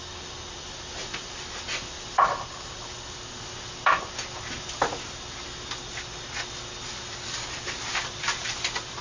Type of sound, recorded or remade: recorded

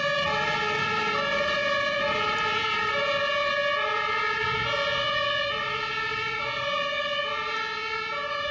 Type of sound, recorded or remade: recorded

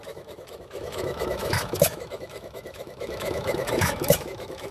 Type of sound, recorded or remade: remade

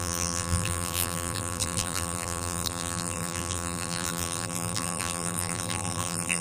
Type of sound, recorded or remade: remade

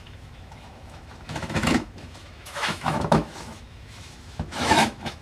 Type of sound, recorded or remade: remade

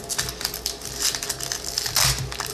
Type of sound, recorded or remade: recorded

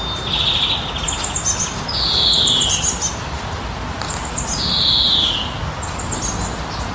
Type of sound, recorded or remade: recorded